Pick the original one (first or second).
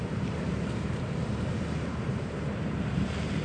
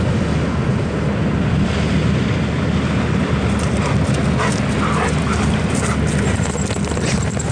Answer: second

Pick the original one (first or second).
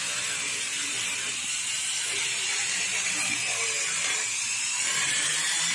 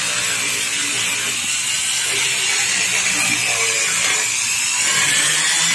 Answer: second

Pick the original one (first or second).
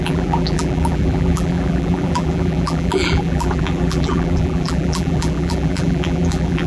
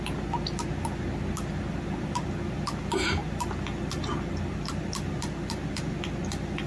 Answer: second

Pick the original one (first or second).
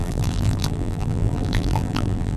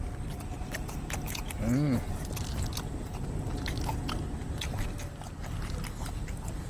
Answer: second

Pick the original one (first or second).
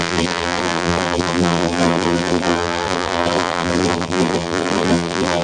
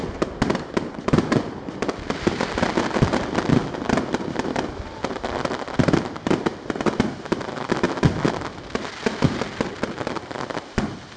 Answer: second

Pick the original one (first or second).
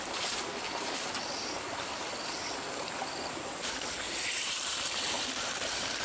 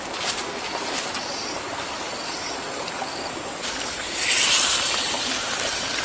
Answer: second